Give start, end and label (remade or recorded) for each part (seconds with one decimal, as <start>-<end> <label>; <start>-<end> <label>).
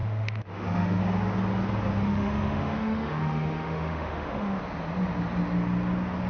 0.0-1.0 remade; 1.0-2.1 recorded; 2.1-4.6 remade; 4.6-6.3 recorded